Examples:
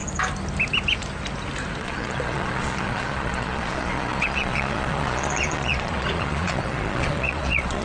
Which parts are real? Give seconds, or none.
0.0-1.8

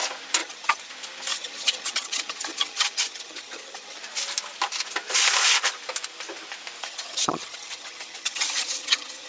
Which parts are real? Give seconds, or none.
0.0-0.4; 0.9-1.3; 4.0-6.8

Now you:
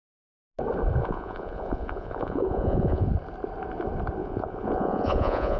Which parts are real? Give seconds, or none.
0.0-1.0; 3.1-4.2